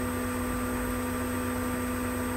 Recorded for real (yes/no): yes